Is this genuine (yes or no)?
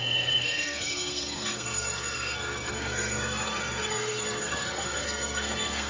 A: no